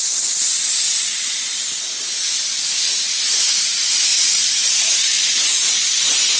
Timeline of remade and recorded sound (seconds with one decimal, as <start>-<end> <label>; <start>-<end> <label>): 0.0-4.1 recorded; 4.1-5.7 remade; 5.7-6.4 recorded